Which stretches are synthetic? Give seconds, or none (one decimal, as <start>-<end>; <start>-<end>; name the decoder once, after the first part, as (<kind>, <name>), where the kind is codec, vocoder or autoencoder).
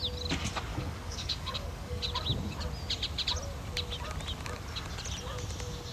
0.7-2.0 (codec, DAC)